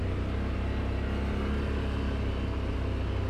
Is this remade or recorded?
recorded